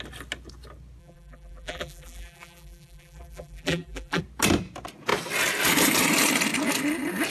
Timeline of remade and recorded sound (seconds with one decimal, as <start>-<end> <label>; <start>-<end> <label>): 0.0-1.0 recorded; 1.0-4.2 remade; 4.2-7.3 recorded